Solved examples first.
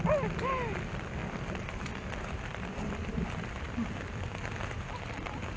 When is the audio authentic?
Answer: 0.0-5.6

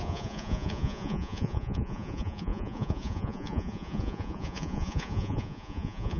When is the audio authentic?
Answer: none

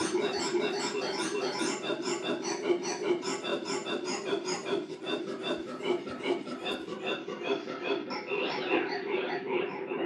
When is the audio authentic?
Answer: 6.6-8.4